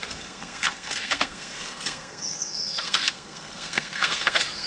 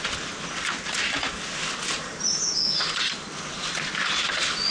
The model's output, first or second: first